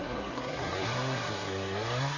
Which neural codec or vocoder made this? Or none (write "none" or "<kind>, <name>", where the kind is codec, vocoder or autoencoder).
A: codec, SNAC